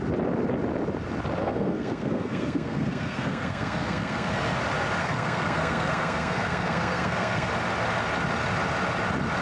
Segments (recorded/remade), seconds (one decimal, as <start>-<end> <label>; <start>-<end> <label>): 0.0-1.4 recorded; 1.4-4.3 remade; 4.3-5.0 recorded; 5.0-7.5 remade; 7.5-9.4 recorded